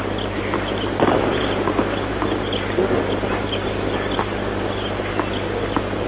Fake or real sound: real